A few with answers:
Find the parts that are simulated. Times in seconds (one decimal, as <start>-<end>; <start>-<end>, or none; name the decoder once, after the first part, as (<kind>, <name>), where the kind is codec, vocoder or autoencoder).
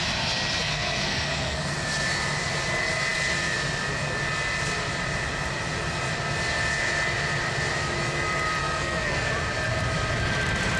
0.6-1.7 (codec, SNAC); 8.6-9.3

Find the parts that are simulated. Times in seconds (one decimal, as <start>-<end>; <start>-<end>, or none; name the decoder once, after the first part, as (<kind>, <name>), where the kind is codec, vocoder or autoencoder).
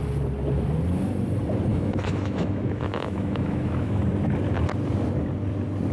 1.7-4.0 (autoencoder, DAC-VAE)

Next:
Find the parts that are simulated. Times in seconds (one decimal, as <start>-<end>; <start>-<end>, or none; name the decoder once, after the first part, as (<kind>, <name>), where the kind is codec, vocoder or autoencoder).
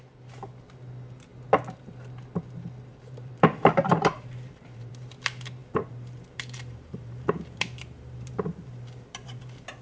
2.9-4.9 (vocoder, BigVGAN v2); 5.6-9.4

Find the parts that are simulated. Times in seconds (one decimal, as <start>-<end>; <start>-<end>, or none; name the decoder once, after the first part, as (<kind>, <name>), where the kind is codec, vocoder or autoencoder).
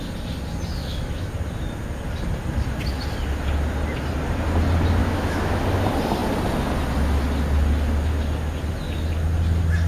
0.8-1.3 (autoencoder, DAC-VAE); 5.0-5.6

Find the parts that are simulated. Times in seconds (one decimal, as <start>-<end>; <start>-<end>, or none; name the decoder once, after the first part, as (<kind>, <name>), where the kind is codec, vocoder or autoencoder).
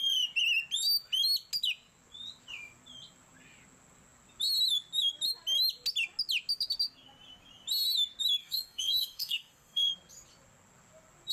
8.4-9.9 (codec, SNAC)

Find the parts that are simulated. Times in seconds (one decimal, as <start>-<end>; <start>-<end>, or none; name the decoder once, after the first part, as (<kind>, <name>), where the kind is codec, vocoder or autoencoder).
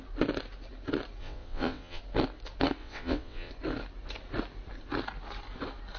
1.2-2.0 (vocoder, WaveNeXt); 2.8-3.5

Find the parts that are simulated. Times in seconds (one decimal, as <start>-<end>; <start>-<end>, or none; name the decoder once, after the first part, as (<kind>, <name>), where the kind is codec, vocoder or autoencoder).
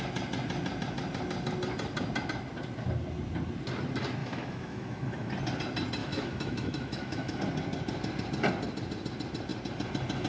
4.2-5.3 (autoencoder, DAC-VAE); 6.0-7.4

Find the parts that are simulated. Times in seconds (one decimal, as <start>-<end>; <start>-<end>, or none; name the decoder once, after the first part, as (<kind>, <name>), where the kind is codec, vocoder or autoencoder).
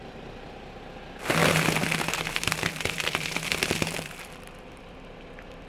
0.0-5.7 (vocoder, BigVGAN v2)